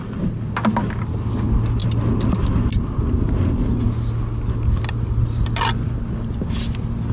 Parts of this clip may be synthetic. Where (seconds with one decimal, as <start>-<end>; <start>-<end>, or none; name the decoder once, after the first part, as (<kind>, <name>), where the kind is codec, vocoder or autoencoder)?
none